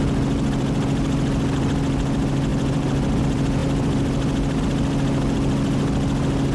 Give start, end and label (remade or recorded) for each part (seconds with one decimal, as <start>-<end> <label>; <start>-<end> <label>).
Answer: 0.0-6.5 recorded